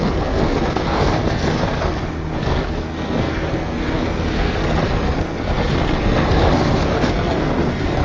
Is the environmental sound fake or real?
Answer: fake